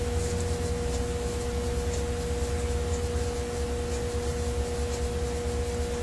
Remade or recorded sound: recorded